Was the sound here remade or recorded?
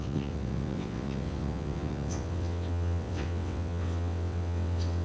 remade